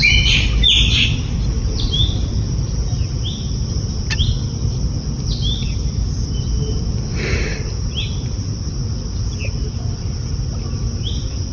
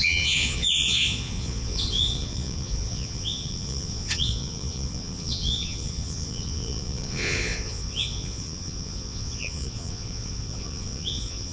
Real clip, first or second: first